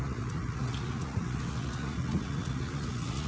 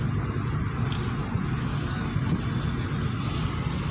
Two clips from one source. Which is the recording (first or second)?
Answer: second